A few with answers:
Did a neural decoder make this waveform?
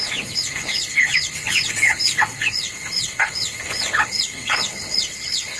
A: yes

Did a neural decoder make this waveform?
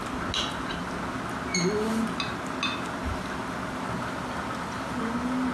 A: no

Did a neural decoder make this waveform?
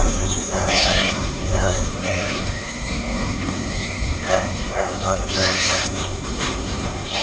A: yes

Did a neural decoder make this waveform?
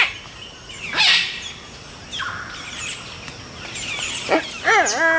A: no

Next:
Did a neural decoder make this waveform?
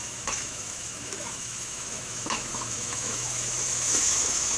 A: yes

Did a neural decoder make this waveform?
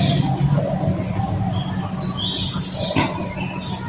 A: no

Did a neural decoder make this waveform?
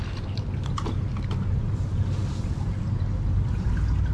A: no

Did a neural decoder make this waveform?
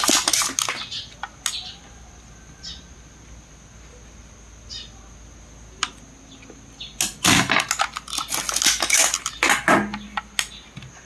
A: no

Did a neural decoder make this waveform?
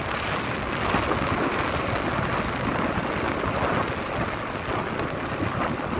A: no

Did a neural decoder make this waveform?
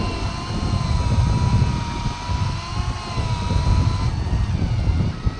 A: no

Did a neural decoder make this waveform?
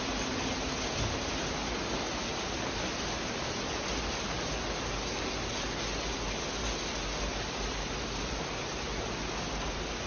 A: no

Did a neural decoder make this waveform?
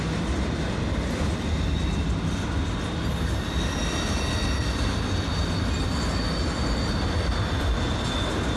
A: no